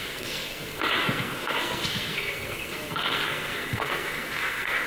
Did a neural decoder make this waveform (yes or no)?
yes